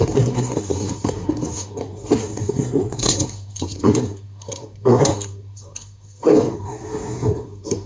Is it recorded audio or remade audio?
remade